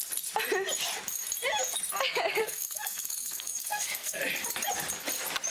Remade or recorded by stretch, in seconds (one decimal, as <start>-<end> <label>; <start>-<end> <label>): 0.0-2.4 recorded; 2.4-4.2 remade; 4.2-5.5 recorded